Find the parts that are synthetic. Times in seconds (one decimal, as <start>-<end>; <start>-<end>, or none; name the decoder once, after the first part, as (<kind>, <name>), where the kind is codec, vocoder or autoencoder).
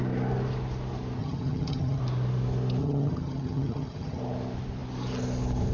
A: 1.2-2.0 (vocoder, HiFi-GAN); 2.8-4.2